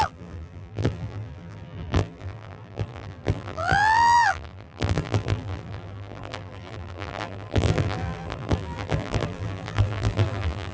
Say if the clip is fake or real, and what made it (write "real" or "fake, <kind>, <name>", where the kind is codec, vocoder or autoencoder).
fake, vocoder, BigVGAN v2